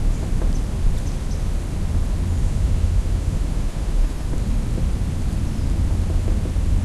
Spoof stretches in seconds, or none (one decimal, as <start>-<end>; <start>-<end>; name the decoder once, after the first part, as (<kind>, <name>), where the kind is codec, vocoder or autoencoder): 2.4-4.3 (autoencoder, DAC-VAE)